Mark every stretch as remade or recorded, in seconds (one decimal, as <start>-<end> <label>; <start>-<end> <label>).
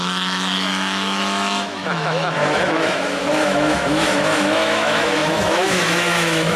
0.0-6.6 remade